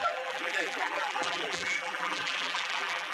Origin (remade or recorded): remade